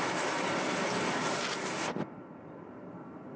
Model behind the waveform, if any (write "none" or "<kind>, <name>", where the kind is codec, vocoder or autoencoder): none